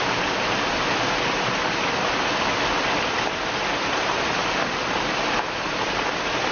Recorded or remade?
recorded